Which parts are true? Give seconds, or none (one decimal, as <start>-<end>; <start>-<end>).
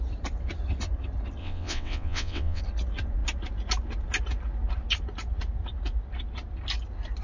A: 0.0-1.4; 2.6-7.2